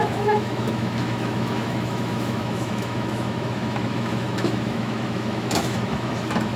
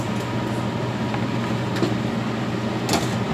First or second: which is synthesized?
first